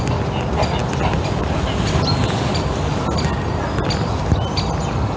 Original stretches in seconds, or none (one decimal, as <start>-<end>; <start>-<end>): 0.0-5.2

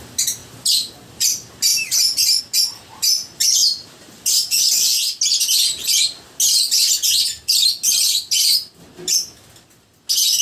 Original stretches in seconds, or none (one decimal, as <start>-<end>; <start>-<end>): 0.0-1.7; 2.4-3.6; 4.6-10.4

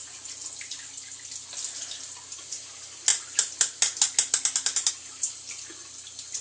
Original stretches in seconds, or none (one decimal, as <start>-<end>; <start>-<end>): 0.0-6.4